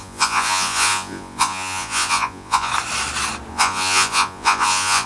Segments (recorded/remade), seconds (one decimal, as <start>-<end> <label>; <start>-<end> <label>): 0.0-2.7 remade; 2.7-3.5 recorded; 3.5-5.1 remade